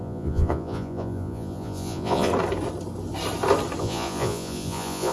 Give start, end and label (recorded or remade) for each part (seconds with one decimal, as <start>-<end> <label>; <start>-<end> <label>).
0.0-2.3 remade; 2.3-3.8 recorded; 3.8-5.1 remade